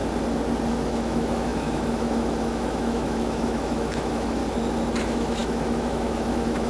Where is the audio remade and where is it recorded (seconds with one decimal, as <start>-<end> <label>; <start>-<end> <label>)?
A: 0.0-0.7 recorded; 0.7-4.4 remade; 4.4-5.0 recorded; 5.0-6.7 remade